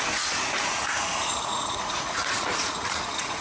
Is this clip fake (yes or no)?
yes